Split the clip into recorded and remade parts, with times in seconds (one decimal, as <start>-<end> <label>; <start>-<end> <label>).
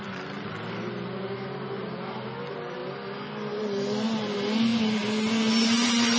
0.0-6.2 recorded